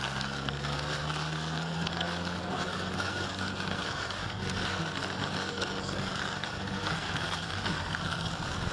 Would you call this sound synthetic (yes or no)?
yes